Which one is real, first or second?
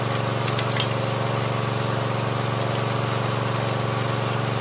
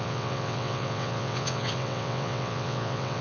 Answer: first